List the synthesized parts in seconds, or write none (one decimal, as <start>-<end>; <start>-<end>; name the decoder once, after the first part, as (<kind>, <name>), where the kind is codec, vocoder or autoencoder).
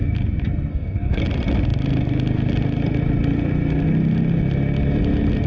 0.7-1.2 (codec, SNAC)